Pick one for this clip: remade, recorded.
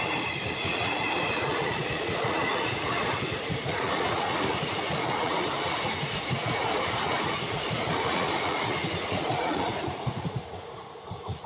remade